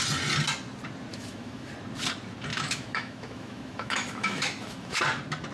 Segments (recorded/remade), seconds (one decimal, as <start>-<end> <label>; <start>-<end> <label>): 0.0-1.1 recorded; 1.1-1.7 remade; 1.7-2.5 recorded; 2.5-5.0 remade; 5.0-5.5 recorded